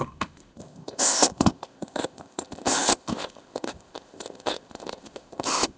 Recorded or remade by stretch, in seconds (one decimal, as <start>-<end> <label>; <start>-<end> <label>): 0.0-5.8 remade